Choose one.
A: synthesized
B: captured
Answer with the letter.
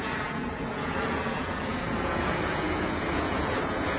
A